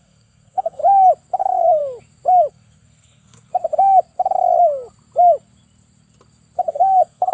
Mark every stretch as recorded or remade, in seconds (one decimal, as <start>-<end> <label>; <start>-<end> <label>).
0.0-0.8 remade; 0.8-1.4 recorded; 1.4-1.8 remade; 1.8-2.5 recorded; 2.5-3.5 remade; 3.5-6.7 recorded; 6.7-7.3 remade

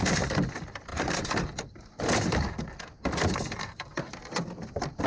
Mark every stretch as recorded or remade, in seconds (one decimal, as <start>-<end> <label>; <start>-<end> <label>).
0.0-5.1 recorded

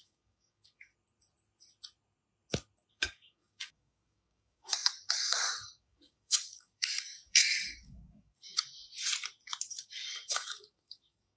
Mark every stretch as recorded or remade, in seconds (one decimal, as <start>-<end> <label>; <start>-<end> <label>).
0.0-0.9 remade; 0.9-2.9 recorded; 2.9-8.7 remade; 8.7-9.8 recorded; 9.8-11.4 remade